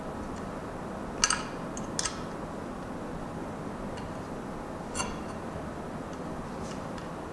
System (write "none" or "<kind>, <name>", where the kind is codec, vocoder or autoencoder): none